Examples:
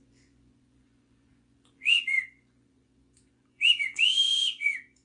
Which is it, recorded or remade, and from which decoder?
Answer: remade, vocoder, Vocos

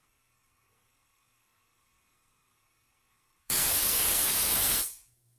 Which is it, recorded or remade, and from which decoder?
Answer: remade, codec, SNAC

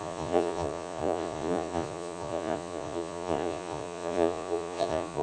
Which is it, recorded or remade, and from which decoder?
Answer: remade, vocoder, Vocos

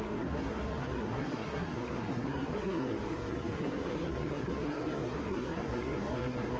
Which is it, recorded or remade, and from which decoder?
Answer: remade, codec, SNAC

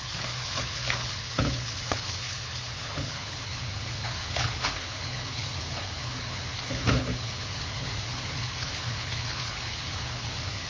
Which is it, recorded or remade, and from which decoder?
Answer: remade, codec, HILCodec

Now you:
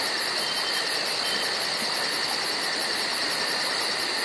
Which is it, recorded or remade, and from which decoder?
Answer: recorded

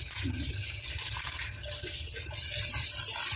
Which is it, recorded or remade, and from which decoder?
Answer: recorded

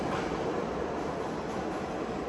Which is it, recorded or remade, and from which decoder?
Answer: recorded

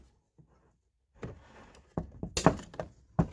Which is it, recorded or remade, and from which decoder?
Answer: recorded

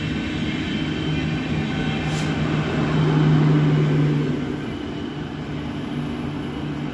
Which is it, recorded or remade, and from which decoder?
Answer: recorded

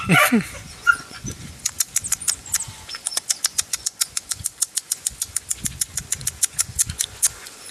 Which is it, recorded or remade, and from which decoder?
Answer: remade, vocoder, Vocos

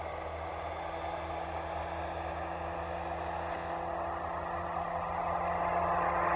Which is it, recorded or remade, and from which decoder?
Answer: recorded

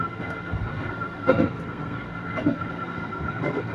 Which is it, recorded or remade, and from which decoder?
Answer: remade, codec, SNAC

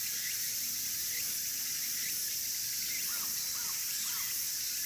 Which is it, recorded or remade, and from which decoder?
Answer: recorded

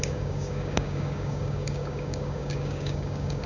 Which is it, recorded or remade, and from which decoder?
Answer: remade, codec, DAC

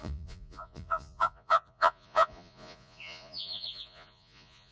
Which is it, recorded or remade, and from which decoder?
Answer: remade, vocoder, Vocos